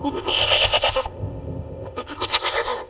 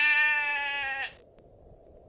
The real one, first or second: second